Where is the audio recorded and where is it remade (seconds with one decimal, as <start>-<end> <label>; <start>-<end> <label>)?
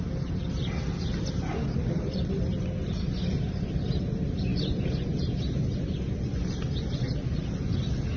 0.0-8.2 recorded